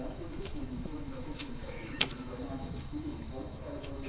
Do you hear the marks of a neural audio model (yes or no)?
yes